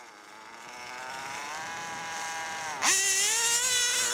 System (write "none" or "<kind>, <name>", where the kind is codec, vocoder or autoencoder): none